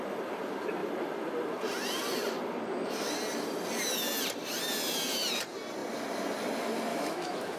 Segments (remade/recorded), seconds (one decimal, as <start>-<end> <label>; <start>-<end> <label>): 0.0-6.9 recorded; 6.9-7.6 remade